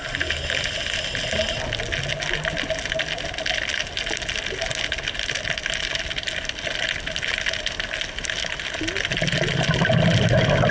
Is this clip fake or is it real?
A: real